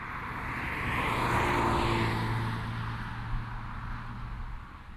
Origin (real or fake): real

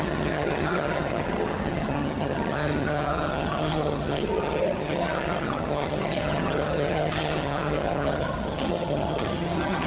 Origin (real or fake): fake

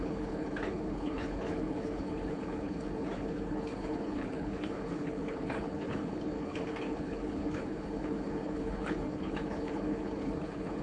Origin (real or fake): fake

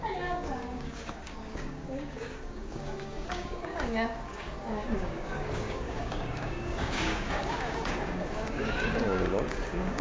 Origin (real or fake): fake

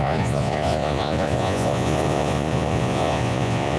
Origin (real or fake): fake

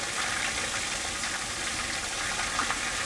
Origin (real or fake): real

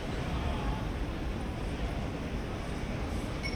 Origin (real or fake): fake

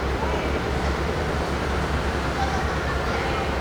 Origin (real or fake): fake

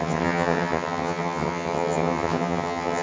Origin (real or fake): fake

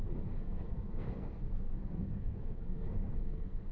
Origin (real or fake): fake